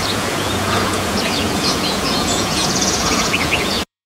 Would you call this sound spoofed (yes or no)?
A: yes